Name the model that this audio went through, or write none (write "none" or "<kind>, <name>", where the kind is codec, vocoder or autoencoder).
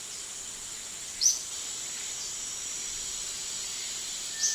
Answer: none